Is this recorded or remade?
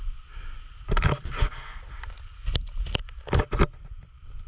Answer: recorded